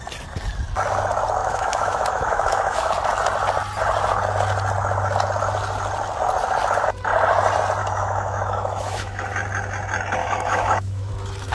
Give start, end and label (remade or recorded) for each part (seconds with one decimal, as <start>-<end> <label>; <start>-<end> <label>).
0.0-1.4 recorded; 1.4-2.9 remade; 2.9-7.8 recorded; 7.8-9.2 remade; 9.2-10.2 recorded; 10.2-11.1 remade; 11.1-11.5 recorded